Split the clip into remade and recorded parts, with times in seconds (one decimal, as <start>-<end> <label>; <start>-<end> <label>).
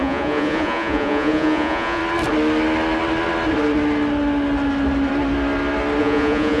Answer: 0.0-2.0 remade; 2.0-6.0 recorded; 6.0-6.6 remade